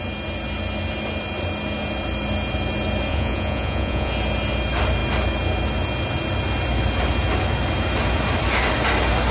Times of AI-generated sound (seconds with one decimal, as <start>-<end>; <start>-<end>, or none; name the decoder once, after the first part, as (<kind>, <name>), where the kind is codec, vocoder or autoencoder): 3.1-4.1 (vocoder, Vocos)